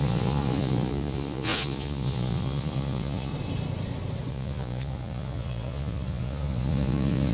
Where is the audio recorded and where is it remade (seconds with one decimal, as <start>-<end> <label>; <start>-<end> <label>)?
0.0-3.3 remade; 3.3-4.3 recorded; 4.3-7.3 remade